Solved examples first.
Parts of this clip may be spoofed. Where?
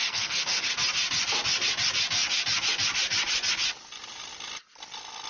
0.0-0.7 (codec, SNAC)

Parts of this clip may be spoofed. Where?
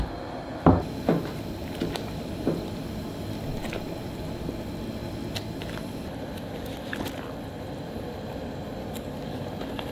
8.8-9.5 (codec, DAC)